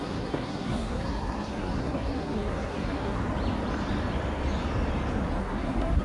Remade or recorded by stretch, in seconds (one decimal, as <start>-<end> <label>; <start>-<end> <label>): 0.0-3.2 remade; 3.2-5.4 recorded; 5.4-6.0 remade